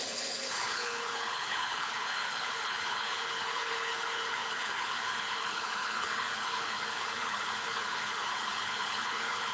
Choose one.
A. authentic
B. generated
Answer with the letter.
B